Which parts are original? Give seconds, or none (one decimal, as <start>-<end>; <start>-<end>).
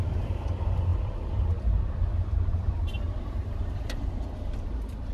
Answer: 0.0-5.1